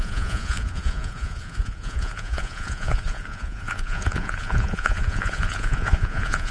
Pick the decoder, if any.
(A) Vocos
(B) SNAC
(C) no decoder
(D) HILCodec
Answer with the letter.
A